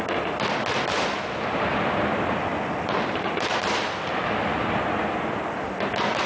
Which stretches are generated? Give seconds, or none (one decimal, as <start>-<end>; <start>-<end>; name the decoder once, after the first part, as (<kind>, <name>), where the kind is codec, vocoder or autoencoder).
2.5-5.0 (vocoder, BigVGAN v2)